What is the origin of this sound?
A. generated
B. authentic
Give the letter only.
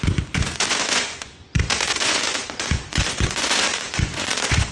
A